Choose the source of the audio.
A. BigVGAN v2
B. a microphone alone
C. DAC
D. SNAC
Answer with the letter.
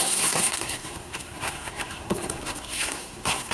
D